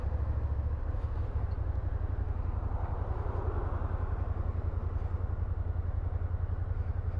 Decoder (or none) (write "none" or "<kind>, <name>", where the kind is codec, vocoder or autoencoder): none